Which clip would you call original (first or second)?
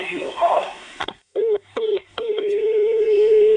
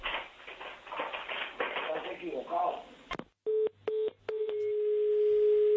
second